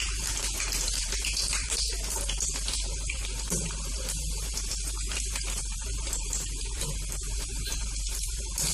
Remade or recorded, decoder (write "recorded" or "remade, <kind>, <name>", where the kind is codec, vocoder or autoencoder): remade, vocoder, BigVGAN v2